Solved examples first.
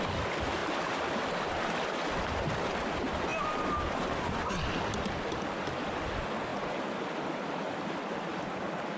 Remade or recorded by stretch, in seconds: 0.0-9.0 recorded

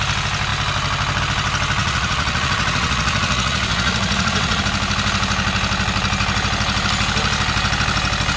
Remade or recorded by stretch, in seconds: 0.0-1.8 recorded; 1.8-4.6 remade; 4.6-8.4 recorded

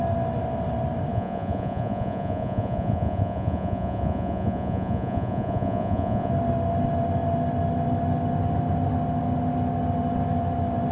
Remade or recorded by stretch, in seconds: 0.0-1.1 recorded; 1.1-6.3 remade; 6.3-10.9 recorded

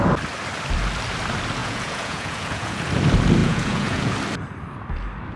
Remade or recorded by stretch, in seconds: 0.0-1.6 recorded; 1.6-2.8 remade; 2.8-3.4 recorded; 3.4-4.1 remade; 4.1-5.4 recorded

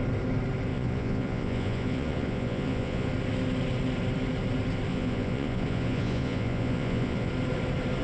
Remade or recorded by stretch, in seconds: 0.0-0.7 recorded; 0.7-3.1 remade; 3.1-4.9 recorded; 4.9-7.3 remade; 7.3-8.0 recorded

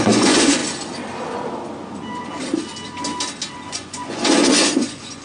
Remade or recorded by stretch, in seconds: 0.0-0.6 remade; 0.6-3.7 recorded; 3.7-5.2 remade

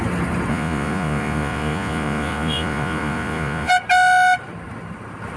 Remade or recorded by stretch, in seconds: 0.0-0.5 recorded; 0.5-3.7 remade; 3.7-5.4 recorded